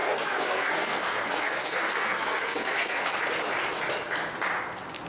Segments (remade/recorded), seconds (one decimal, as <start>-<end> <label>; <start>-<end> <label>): 0.0-3.1 remade; 3.1-5.1 recorded